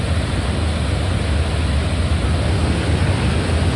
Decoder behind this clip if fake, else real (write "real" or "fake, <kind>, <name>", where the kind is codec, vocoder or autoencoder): real